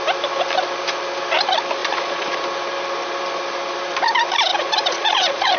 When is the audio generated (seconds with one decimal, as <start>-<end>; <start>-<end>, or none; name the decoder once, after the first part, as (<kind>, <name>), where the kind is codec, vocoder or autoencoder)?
1.8-2.4 (vocoder, Vocos); 4.5-5.6